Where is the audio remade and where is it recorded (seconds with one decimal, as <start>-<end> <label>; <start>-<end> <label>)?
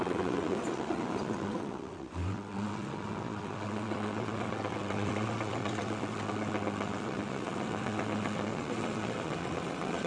0.0-10.1 remade